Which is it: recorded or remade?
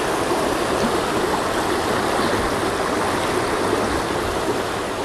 recorded